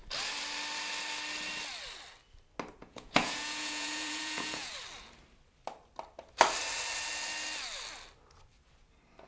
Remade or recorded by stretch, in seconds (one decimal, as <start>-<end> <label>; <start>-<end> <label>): 0.0-2.8 recorded; 2.8-4.7 remade; 4.7-9.3 recorded